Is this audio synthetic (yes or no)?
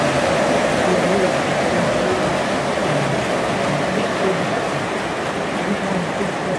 no